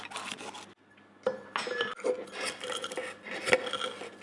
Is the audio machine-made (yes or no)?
no